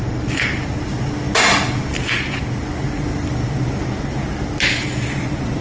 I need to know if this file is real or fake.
real